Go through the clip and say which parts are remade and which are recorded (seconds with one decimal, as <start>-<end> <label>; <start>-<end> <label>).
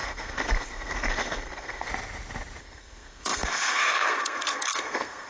0.0-1.9 remade; 1.9-2.6 recorded; 2.6-5.3 remade